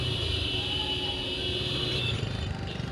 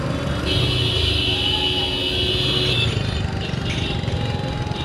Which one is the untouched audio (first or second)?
second